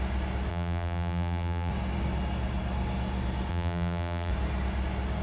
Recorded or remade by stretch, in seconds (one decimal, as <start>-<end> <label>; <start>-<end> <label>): 0.0-0.5 recorded; 0.5-1.7 remade; 1.7-3.5 recorded; 3.5-4.3 remade; 4.3-5.2 recorded